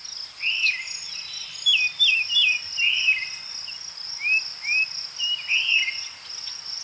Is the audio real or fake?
real